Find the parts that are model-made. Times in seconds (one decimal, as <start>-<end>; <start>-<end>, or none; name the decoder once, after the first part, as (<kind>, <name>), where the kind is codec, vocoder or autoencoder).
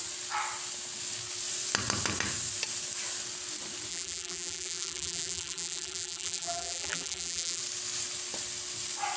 3.9-7.6 (vocoder, BigVGAN v2)